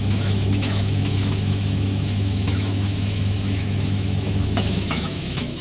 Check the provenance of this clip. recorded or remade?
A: remade